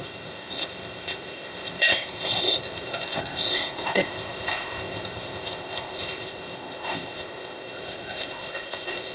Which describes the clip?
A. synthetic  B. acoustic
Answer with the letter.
A